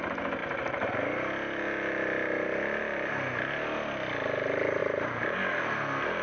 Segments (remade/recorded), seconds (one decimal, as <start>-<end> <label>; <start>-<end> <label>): 0.0-4.8 recorded; 4.8-5.4 remade; 5.4-6.2 recorded